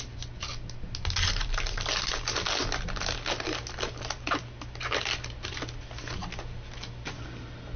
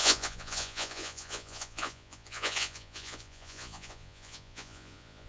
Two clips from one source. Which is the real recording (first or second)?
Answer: first